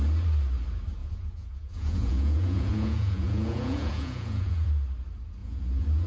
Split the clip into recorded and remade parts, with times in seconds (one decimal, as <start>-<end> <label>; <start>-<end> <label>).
0.0-1.0 recorded; 1.0-4.7 remade; 4.7-5.4 recorded; 5.4-6.1 remade